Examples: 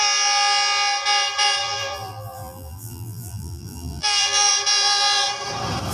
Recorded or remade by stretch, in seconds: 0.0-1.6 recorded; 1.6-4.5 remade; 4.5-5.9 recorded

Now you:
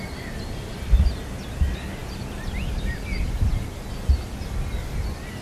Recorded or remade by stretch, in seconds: 0.0-5.4 recorded

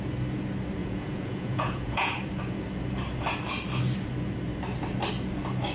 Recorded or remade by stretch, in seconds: 0.0-0.8 recorded; 0.8-2.1 remade; 2.1-5.7 recorded

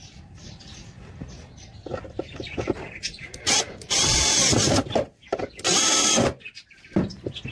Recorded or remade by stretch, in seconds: 0.0-1.9 recorded; 1.9-4.0 remade; 4.0-4.8 recorded; 4.8-5.4 remade; 5.4-7.5 recorded